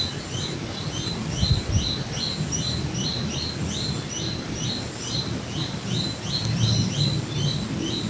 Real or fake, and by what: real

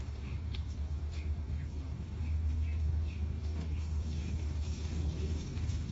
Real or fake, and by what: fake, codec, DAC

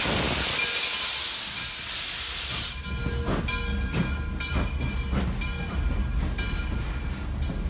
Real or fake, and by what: real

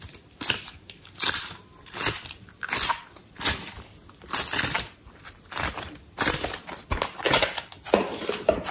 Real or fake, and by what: fake, vocoder, BigVGAN v2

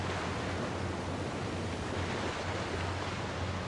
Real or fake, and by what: real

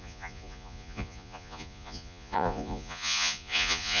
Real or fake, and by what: fake, vocoder, Vocos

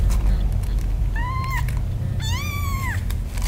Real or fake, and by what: fake, vocoder, BigVGAN v2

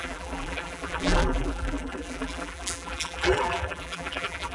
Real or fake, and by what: fake, vocoder, BigVGAN v2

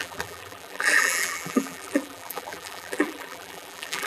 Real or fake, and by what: fake, vocoder, BigVGAN v2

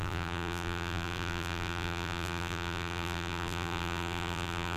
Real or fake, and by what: fake, vocoder, BigVGAN v2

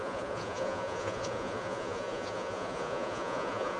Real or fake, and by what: fake, vocoder, Vocos